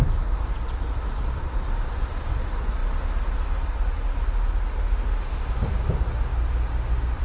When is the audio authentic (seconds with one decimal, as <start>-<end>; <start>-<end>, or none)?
2.1-7.2